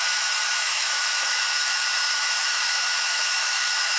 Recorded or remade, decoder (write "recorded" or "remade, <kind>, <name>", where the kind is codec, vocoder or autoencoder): remade, autoencoder, DAC-VAE